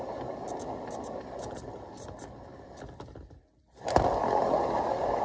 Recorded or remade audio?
recorded